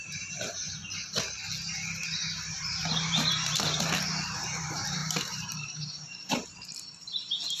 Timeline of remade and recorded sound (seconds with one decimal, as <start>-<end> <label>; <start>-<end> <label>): 0.0-0.8 remade; 0.8-2.5 recorded; 2.5-7.6 remade